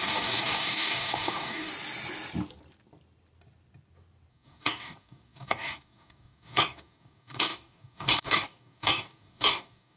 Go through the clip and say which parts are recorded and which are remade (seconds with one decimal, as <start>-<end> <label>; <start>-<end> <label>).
0.0-1.7 remade; 1.7-4.3 recorded; 4.3-10.0 remade